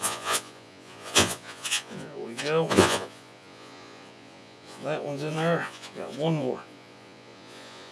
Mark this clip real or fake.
fake